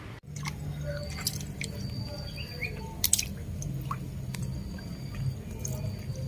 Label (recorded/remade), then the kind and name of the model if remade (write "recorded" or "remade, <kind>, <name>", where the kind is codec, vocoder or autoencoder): recorded